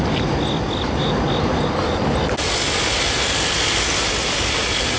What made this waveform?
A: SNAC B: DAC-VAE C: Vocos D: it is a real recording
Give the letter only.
D